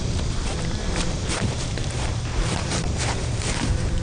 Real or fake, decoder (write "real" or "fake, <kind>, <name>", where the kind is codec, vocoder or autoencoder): fake, vocoder, BigVGAN v2